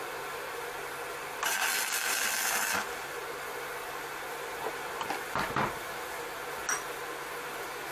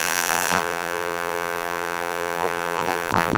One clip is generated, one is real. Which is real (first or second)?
first